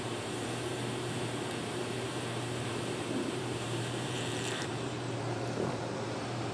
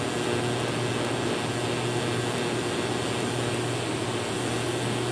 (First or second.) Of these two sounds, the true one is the second